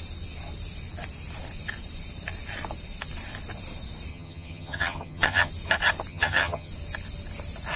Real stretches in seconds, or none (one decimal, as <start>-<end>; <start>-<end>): 0.0-4.1; 5.5-6.1; 6.7-7.8